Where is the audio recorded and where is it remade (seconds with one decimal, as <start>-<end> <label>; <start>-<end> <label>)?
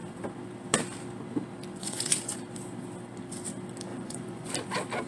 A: 0.0-1.8 recorded; 1.8-2.4 remade; 2.4-3.9 recorded; 3.9-4.5 remade; 4.5-5.1 recorded